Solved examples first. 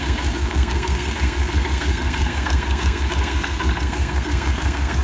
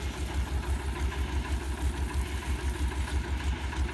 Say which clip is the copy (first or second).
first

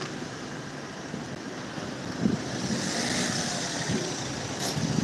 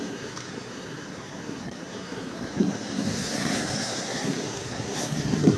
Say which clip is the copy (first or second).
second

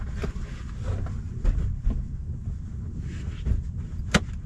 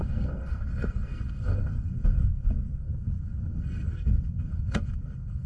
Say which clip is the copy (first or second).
second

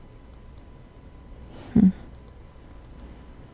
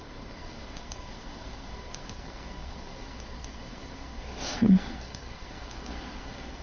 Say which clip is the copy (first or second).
second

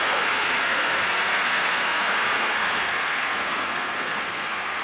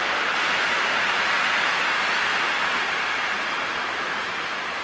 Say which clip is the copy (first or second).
first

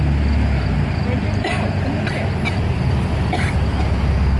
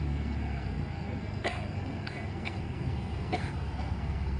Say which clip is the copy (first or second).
second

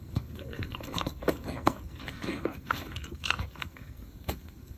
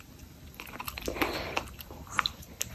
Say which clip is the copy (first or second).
first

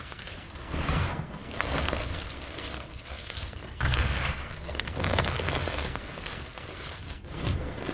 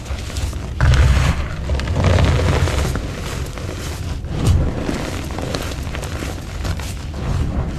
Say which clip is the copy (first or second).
first